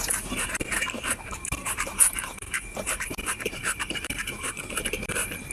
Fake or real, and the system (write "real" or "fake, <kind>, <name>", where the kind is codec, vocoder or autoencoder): fake, vocoder, BigVGAN v2